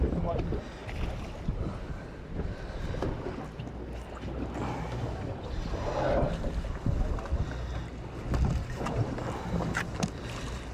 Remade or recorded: recorded